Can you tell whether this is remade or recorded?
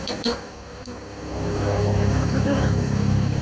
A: remade